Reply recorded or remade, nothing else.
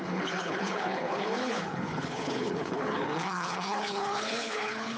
remade